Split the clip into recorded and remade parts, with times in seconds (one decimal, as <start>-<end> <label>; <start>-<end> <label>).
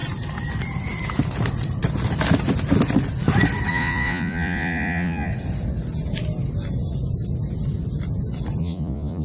0.0-3.7 recorded; 3.7-5.3 remade; 5.3-8.6 recorded; 8.6-9.2 remade